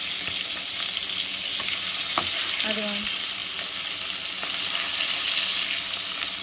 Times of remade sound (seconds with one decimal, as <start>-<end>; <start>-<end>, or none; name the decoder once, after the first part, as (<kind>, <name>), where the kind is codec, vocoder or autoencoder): none